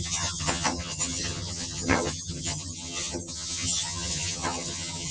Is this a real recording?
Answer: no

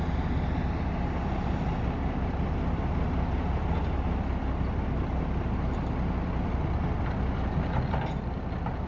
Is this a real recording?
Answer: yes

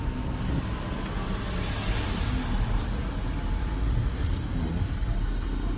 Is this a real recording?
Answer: yes